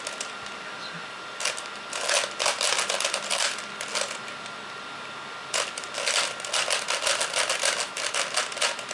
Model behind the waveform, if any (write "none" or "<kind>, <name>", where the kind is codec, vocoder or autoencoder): none